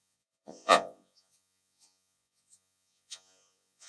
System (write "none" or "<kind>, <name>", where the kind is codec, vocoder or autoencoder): vocoder, Vocos